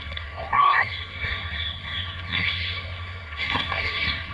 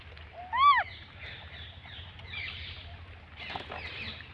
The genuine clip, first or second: second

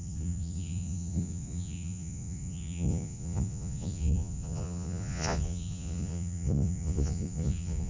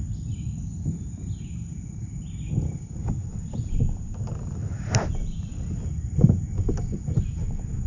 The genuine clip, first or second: second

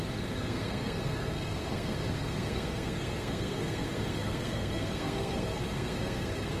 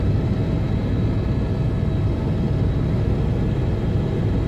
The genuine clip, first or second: second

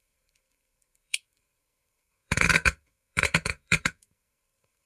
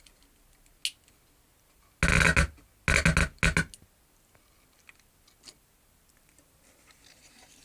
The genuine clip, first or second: second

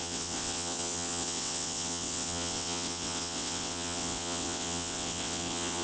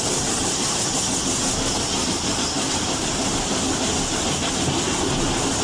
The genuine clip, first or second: second